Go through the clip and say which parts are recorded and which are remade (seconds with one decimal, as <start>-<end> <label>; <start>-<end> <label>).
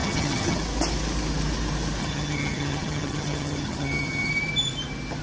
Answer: 0.0-0.6 remade; 0.6-2.0 recorded; 2.0-4.3 remade; 4.3-5.2 recorded